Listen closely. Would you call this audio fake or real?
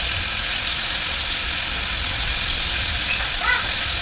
real